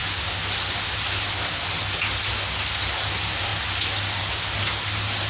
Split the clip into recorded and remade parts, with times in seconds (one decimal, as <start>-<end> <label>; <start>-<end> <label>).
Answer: 0.0-5.3 recorded